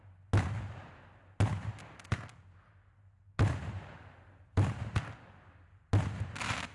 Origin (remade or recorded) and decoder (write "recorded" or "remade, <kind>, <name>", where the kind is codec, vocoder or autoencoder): recorded